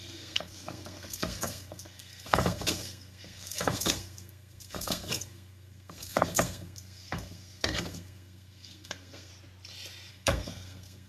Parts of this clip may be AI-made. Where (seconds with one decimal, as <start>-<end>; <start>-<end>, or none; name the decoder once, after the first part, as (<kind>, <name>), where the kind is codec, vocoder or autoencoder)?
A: 0.0-9.3 (codec, SNAC); 10.1-11.1